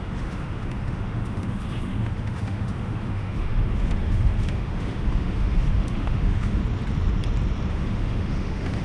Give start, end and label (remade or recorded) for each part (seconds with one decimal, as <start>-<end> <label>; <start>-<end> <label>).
0.0-6.6 remade; 6.6-7.7 recorded; 7.7-8.8 remade